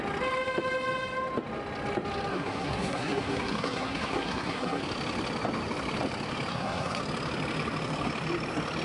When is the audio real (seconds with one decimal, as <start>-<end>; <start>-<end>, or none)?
0.0-2.3; 4.8-6.5; 7.0-8.8